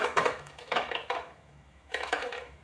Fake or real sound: fake